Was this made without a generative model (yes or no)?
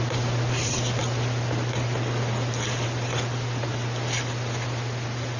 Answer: yes